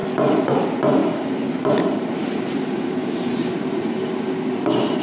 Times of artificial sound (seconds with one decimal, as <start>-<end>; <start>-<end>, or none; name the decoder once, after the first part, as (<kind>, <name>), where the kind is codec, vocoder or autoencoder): 1.0-4.0 (vocoder, BigVGAN v2)